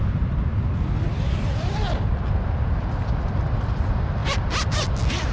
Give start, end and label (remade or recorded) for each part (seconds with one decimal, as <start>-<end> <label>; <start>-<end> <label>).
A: 0.0-5.3 recorded